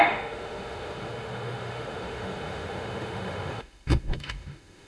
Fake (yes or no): yes